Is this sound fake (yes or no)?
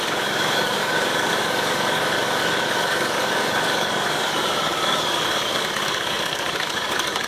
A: yes